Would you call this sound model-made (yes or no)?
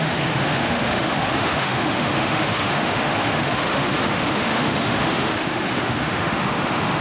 yes